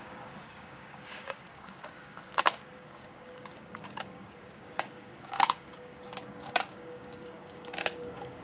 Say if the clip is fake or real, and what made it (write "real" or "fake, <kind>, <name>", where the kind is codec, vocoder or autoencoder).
fake, codec, DAC